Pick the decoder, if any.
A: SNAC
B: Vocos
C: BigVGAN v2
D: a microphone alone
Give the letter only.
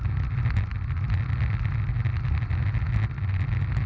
D